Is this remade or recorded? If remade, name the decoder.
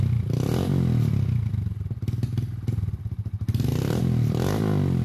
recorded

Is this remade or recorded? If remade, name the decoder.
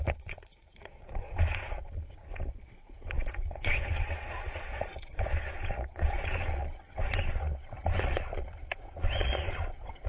remade, vocoder, Vocos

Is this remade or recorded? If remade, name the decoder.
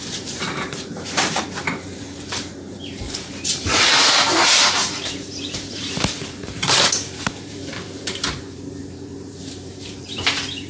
remade, vocoder, BigVGAN v2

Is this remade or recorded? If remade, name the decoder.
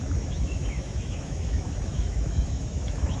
remade, autoencoder, DAC-VAE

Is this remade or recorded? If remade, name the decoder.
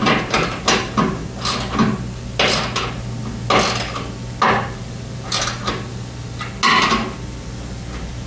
recorded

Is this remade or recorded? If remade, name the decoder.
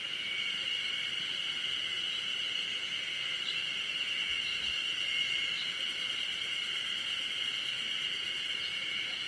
recorded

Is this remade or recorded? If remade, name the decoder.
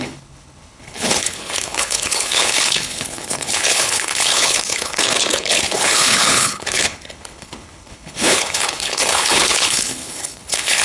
remade, codec, HILCodec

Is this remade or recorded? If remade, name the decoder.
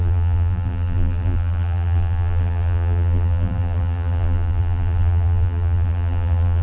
remade, vocoder, BigVGAN v2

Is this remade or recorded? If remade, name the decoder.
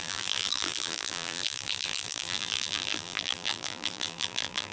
remade, vocoder, BigVGAN v2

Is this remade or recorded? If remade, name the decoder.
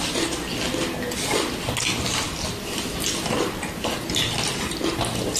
recorded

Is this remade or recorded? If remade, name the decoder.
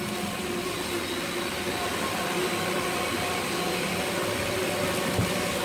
recorded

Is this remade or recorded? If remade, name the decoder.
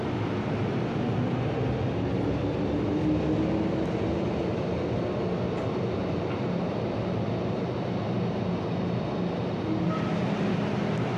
recorded